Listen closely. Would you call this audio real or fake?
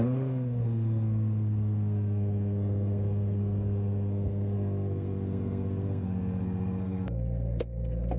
fake